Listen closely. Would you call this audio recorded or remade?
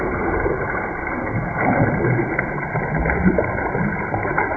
remade